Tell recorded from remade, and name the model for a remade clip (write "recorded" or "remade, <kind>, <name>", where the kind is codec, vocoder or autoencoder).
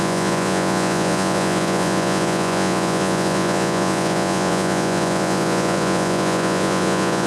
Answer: remade, vocoder, Vocos